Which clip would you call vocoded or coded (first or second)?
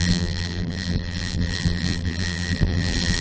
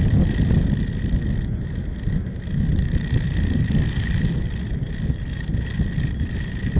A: first